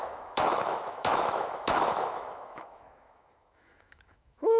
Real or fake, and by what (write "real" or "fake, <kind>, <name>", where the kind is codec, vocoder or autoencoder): fake, autoencoder, DAC-VAE